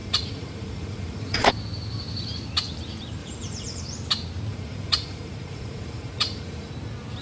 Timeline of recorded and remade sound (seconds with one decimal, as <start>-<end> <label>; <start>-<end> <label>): 0.0-1.5 remade; 1.5-3.2 recorded; 3.2-3.8 remade; 3.8-4.5 recorded; 4.5-6.7 remade; 6.7-7.2 recorded